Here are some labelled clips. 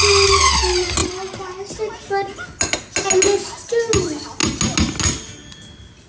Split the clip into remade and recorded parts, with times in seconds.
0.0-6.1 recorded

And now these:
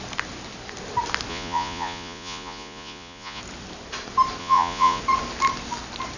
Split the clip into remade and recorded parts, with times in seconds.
0.0-1.3 recorded; 1.3-3.4 remade; 3.4-4.4 recorded; 4.4-5.0 remade; 5.0-6.2 recorded

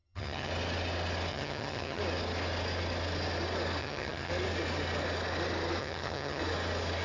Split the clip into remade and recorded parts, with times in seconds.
0.0-0.5 remade; 0.5-1.3 recorded; 1.3-2.0 remade; 2.0-3.8 recorded; 3.8-4.3 remade; 4.3-5.8 recorded; 5.8-6.4 remade; 6.4-7.0 recorded

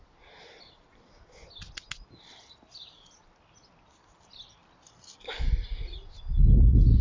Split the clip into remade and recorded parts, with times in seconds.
0.0-7.0 recorded

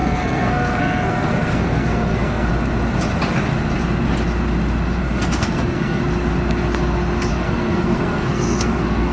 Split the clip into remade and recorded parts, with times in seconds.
0.0-2.5 remade; 2.5-5.0 recorded; 5.0-6.0 remade; 6.0-7.3 recorded; 7.3-9.1 remade

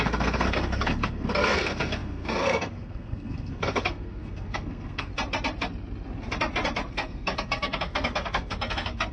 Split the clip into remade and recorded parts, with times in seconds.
0.0-5.1 remade; 5.1-6.9 recorded; 6.9-9.1 remade

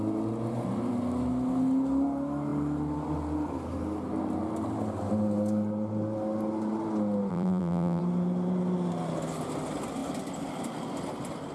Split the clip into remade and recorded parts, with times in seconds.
0.0-7.3 recorded; 7.3-8.0 remade; 8.0-11.5 recorded